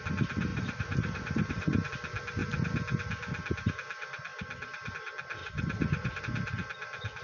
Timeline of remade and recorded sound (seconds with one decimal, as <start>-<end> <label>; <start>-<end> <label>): 0.0-0.5 recorded; 0.5-1.9 remade; 1.9-5.4 recorded; 5.4-6.2 remade; 6.2-7.2 recorded